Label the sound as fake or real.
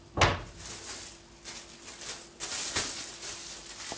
real